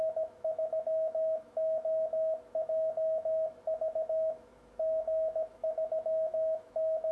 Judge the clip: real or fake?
fake